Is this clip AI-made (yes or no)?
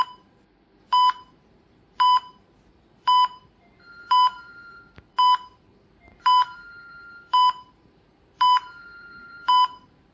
yes